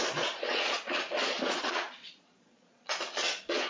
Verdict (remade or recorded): remade